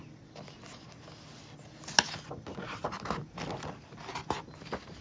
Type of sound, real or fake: real